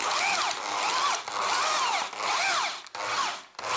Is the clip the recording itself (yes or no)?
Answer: yes